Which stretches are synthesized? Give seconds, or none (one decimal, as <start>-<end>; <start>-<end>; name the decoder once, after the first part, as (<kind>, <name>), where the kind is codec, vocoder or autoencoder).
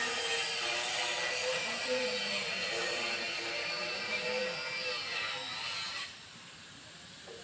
1.4-4.4 (vocoder, BigVGAN v2); 5.9-7.4